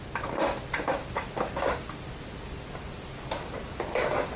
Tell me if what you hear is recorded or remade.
recorded